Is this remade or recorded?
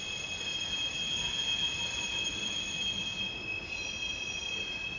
recorded